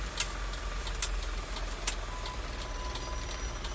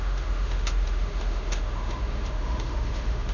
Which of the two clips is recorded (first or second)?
first